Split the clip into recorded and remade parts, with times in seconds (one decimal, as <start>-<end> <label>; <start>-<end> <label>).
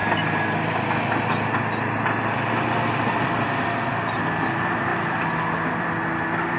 0.0-6.6 recorded